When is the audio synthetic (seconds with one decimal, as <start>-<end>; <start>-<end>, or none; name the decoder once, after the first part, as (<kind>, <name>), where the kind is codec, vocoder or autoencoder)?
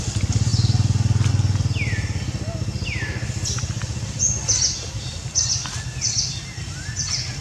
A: none